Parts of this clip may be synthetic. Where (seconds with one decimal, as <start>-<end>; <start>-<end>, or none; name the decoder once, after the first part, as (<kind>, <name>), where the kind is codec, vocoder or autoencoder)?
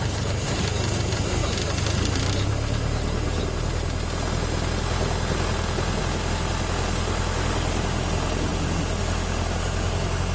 none